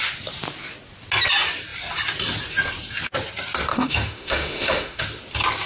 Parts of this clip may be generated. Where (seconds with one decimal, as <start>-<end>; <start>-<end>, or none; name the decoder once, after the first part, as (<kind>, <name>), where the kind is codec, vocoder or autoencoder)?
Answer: 3.7-5.0 (autoencoder, DAC-VAE)